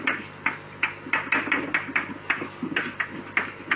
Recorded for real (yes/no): yes